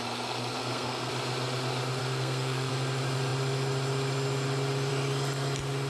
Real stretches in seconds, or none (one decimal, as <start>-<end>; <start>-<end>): 0.0-0.6; 1.1-2.0; 2.7-5.9